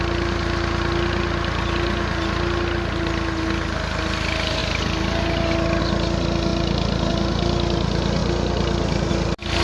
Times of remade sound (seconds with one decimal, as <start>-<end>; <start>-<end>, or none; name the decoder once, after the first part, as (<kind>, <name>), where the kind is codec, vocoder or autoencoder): none